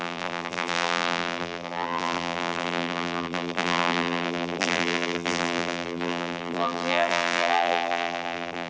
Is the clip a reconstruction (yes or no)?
yes